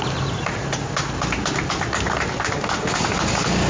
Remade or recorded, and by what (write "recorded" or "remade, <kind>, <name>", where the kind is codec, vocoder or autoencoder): recorded